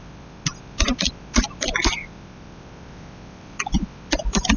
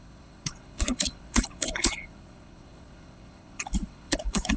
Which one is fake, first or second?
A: second